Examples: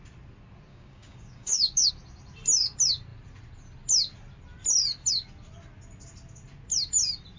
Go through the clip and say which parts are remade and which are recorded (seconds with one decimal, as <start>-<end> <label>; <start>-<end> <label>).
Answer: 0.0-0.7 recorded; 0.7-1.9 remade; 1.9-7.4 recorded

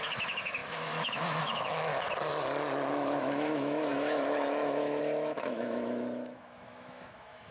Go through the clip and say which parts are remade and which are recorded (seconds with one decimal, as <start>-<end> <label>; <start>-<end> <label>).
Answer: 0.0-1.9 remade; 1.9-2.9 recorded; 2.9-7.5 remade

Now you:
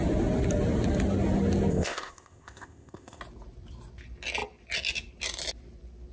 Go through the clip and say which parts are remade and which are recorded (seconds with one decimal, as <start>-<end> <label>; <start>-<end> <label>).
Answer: 0.0-1.7 recorded; 1.7-3.2 remade; 3.2-6.1 recorded

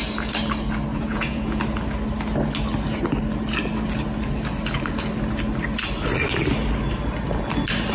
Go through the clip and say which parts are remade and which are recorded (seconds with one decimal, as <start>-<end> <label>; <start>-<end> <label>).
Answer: 0.0-0.9 recorded; 0.9-1.6 remade; 1.6-7.9 recorded

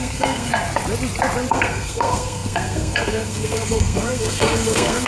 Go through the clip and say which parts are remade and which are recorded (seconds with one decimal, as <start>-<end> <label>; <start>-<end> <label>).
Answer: 0.0-0.5 remade; 0.5-1.5 recorded; 1.5-5.1 remade